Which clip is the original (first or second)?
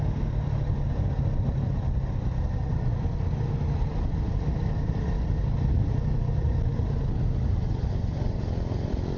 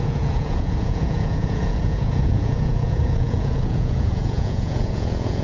first